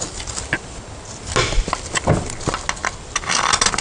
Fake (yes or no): no